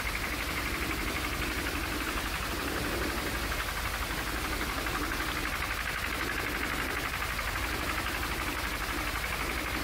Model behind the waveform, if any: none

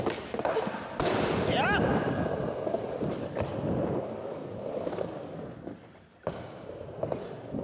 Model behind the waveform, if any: vocoder, BigVGAN v2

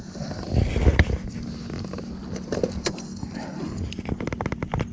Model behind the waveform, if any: none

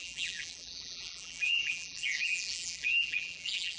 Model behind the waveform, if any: vocoder, BigVGAN v2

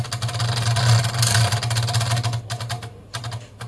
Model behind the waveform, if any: none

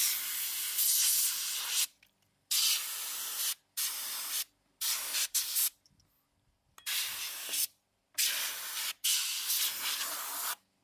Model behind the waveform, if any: none